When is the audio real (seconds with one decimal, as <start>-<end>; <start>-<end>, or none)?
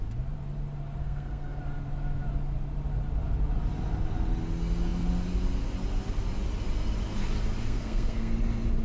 0.0-1.0; 1.6-7.6; 8.3-8.8